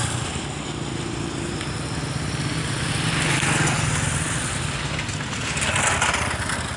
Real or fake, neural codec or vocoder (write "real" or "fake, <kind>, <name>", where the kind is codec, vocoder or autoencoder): real